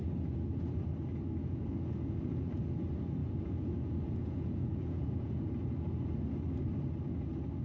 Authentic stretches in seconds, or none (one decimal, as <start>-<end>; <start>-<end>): 0.0-1.4; 2.6-3.2; 5.3-7.6